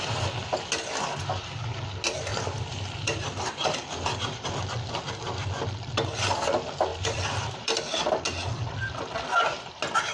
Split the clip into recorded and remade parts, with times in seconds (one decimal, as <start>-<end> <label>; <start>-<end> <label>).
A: 0.0-2.3 recorded; 2.3-5.0 remade; 5.0-6.9 recorded; 6.9-8.1 remade; 8.1-10.1 recorded